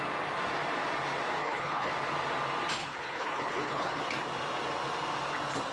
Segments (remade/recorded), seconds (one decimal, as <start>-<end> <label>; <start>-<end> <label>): 0.0-1.4 recorded; 1.4-1.9 remade; 1.9-2.8 recorded; 2.8-4.0 remade; 4.0-5.7 recorded